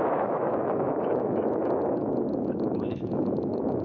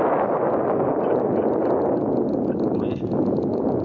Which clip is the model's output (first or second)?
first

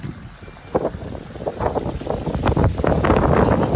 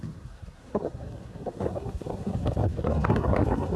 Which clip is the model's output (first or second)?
second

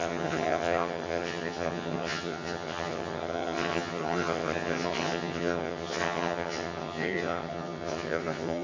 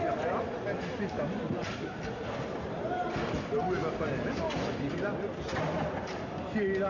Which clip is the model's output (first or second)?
first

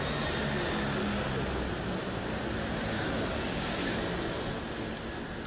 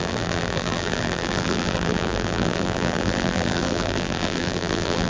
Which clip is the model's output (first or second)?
second